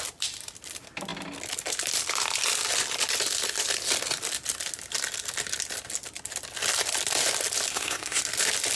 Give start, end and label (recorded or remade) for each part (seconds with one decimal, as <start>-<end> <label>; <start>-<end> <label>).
0.0-7.7 recorded; 7.7-8.2 remade; 8.2-8.8 recorded